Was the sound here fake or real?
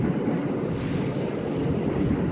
real